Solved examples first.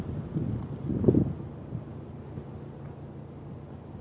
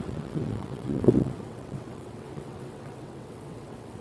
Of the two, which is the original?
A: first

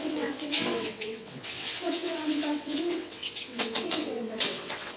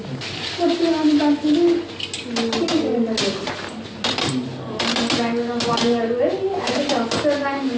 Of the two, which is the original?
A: second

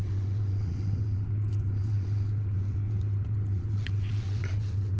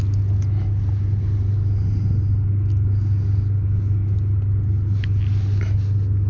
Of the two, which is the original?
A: second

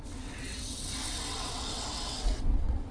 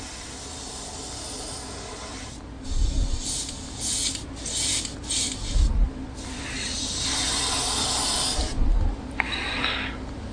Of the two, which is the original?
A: second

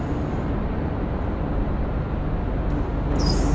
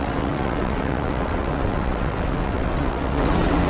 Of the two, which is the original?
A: first